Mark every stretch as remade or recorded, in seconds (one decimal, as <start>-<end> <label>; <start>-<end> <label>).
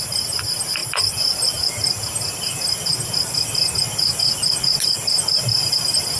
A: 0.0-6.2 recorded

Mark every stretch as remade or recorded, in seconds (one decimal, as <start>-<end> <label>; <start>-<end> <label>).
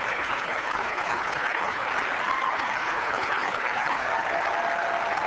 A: 0.0-1.9 remade; 1.9-2.5 recorded; 2.5-4.1 remade; 4.1-5.3 recorded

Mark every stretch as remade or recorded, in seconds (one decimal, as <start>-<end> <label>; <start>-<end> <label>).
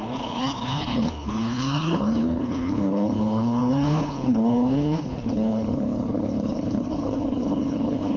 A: 0.0-8.2 remade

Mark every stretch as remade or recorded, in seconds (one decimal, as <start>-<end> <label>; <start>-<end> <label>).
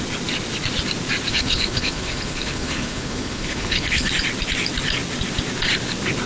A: 0.0-1.3 recorded; 1.3-4.1 remade; 4.1-6.3 recorded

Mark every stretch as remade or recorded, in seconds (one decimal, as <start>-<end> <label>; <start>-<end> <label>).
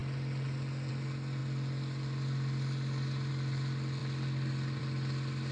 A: 0.0-5.5 recorded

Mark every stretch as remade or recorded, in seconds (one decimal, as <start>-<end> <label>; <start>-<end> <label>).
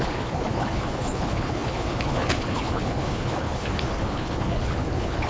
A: 0.0-5.3 remade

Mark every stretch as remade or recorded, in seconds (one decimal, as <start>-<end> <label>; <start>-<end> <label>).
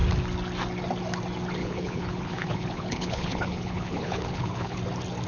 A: 0.0-1.6 recorded; 1.6-4.8 remade; 4.8-5.3 recorded